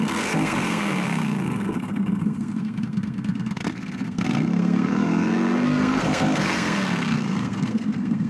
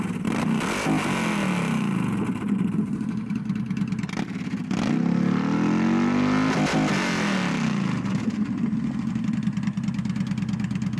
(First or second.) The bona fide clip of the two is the second